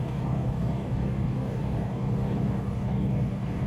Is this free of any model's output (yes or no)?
no